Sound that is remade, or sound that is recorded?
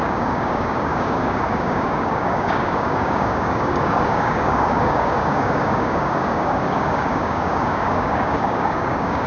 remade